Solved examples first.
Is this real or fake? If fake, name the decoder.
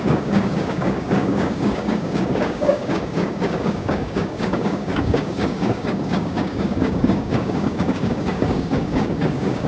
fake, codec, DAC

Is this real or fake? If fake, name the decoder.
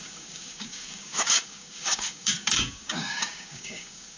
fake, codec, DAC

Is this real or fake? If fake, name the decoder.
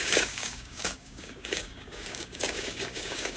fake, codec, DAC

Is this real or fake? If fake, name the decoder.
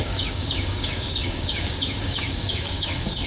fake, codec, DAC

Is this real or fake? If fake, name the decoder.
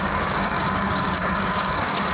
fake, codec, DAC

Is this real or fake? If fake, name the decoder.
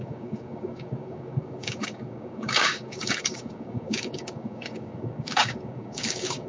fake, codec, DAC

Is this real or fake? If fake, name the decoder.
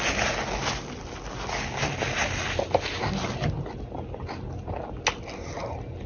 real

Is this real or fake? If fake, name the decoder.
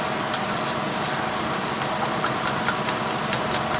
real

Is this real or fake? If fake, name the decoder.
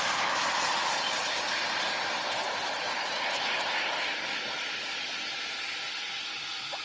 real